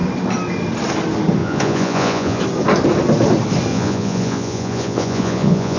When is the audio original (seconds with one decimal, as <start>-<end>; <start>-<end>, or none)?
0.0-1.4; 2.4-3.7